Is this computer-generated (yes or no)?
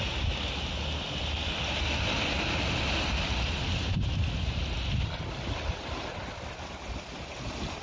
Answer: no